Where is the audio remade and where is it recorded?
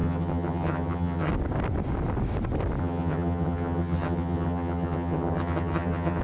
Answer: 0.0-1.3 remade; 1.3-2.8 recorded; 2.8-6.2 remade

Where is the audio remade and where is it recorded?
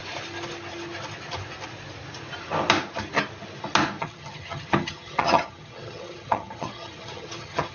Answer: 0.0-4.0 recorded; 4.0-7.7 remade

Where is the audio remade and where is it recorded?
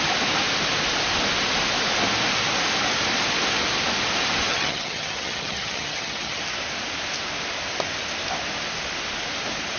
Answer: 0.0-4.5 recorded; 4.5-6.4 remade; 6.4-9.8 recorded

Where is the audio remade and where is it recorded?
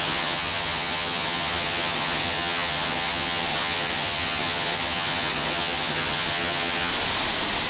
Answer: 0.0-6.9 remade; 6.9-7.7 recorded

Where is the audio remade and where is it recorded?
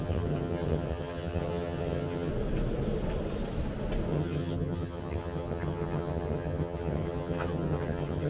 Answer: 0.0-2.3 remade; 2.3-4.1 recorded; 4.1-8.3 remade